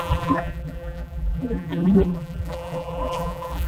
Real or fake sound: fake